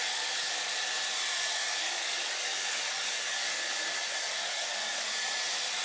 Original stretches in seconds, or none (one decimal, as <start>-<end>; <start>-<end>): 0.8-1.5; 5.0-5.8